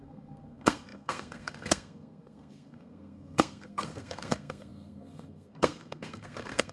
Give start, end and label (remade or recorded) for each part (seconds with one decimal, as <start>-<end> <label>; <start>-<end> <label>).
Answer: 0.0-6.7 remade